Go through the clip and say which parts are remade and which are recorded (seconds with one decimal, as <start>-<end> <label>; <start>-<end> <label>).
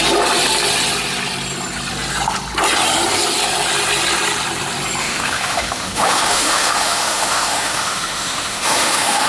0.0-5.0 recorded; 5.0-9.3 remade